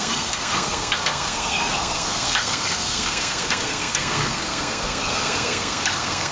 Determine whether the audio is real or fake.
fake